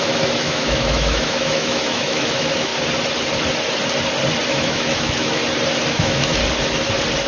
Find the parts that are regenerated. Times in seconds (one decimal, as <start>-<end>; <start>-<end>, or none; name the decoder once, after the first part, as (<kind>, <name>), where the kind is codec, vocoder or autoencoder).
0.0-2.7 (autoencoder, DAC-VAE); 4.5-5.4; 5.9-6.4